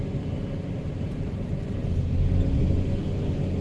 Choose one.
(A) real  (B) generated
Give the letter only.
A